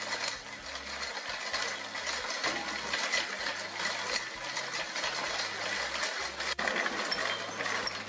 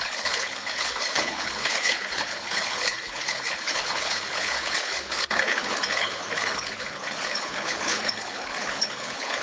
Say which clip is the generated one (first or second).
second